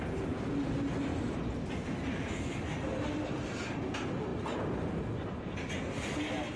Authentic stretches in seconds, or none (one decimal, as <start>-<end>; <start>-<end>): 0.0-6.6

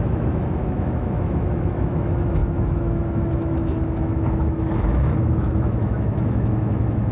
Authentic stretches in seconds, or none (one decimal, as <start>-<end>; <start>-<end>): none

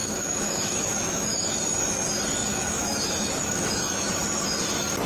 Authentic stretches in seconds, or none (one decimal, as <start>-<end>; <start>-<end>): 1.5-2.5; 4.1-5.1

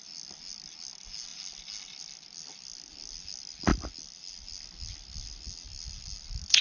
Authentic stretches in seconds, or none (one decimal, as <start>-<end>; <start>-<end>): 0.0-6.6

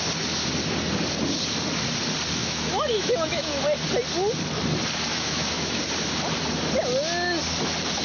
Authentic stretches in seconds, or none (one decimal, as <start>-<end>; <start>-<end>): 0.0-2.4; 3.6-5.1; 5.8-8.0